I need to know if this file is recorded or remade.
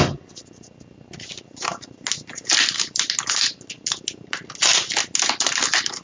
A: recorded